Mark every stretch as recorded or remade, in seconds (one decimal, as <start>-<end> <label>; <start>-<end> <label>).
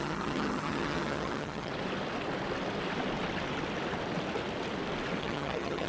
0.0-1.7 remade; 1.7-5.2 recorded; 5.2-5.9 remade